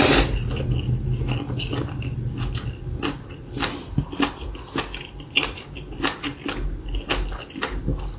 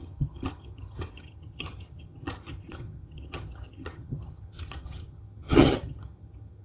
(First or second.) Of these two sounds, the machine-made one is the second